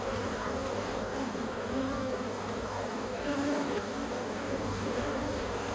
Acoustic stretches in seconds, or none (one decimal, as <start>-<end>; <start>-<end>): none